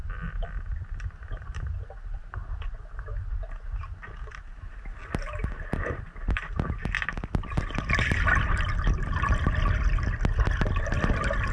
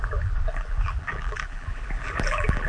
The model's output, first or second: second